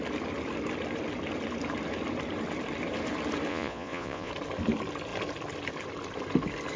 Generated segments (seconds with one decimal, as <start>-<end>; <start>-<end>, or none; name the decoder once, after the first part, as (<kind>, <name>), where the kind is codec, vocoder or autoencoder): 3.5-4.3 (vocoder, Vocos)